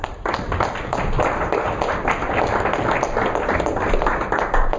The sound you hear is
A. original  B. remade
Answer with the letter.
A